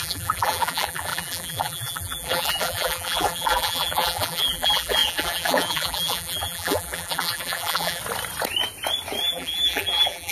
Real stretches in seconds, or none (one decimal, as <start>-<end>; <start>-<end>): 8.0-9.2